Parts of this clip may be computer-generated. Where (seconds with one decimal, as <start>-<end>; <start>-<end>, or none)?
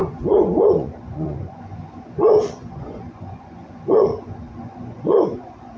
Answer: 0.0-5.8